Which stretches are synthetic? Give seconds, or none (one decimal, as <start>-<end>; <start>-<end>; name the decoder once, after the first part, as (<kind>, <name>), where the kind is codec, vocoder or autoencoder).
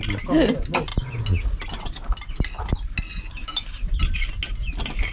none